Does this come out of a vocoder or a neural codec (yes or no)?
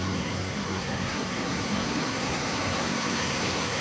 yes